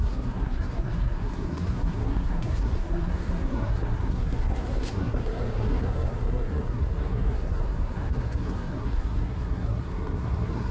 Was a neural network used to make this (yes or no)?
yes